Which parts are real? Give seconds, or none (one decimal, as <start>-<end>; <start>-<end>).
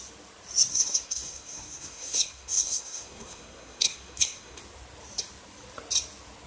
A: 0.0-0.7; 4.6-6.5